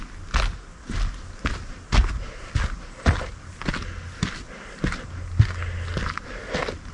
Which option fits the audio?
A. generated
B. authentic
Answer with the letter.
B